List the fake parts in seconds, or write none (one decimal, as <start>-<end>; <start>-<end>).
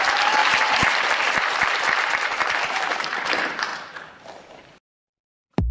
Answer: 0.0-3.7; 4.5-5.7